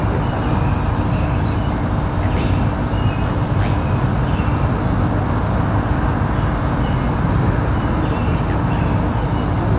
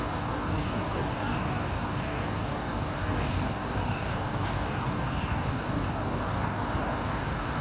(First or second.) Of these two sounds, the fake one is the second